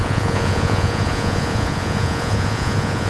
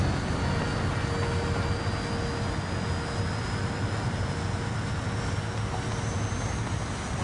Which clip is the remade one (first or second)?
first